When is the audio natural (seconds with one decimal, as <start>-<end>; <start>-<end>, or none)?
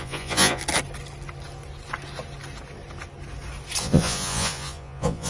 0.6-3.8